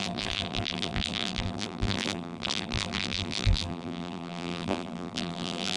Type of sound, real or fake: fake